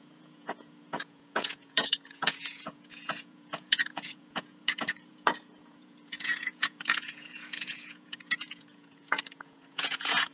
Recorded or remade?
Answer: remade